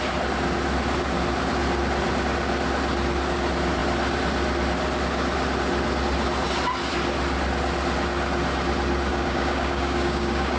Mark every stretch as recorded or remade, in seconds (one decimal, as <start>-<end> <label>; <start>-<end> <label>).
0.0-9.1 recorded; 9.1-10.6 remade